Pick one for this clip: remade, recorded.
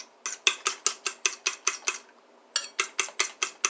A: recorded